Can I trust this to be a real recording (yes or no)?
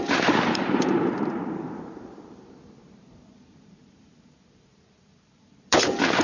no